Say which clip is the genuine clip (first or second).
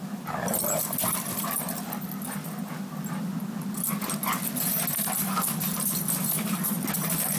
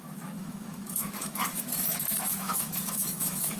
first